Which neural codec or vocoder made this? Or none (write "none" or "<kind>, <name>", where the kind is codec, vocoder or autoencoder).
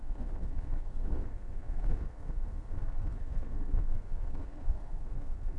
codec, SNAC